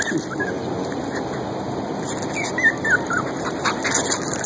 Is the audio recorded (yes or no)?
yes